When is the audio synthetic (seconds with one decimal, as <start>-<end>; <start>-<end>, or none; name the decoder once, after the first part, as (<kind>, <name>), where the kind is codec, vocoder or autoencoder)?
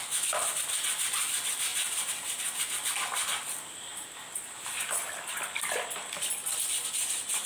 1.7-2.4 (vocoder, BigVGAN v2); 3.9-5.0